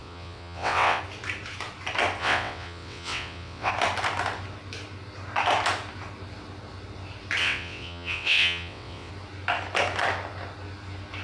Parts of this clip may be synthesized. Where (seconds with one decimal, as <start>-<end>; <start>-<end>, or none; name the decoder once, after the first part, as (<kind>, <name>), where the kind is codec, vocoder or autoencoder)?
0.0-1.0 (vocoder, WaveNeXt); 2.2-3.7; 7.4-9.1